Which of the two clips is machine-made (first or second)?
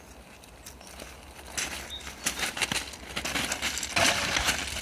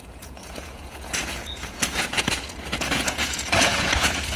second